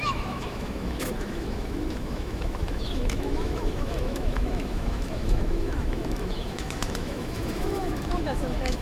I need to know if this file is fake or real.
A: fake